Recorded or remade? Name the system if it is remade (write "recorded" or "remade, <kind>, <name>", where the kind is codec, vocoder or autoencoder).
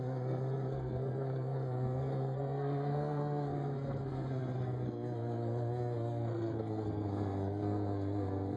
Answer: remade, codec, SNAC